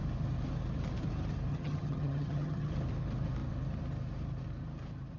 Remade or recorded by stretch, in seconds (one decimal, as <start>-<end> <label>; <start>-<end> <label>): 0.0-1.5 recorded; 1.5-2.7 remade; 2.7-5.2 recorded